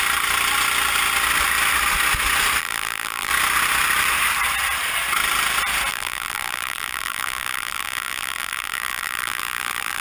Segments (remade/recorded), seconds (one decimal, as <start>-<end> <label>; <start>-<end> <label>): 0.0-2.6 recorded; 2.6-3.3 remade; 3.3-5.9 recorded; 5.9-10.0 remade